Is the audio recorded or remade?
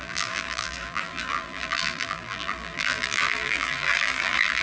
remade